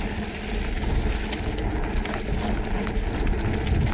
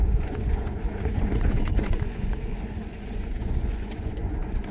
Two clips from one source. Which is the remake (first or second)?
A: second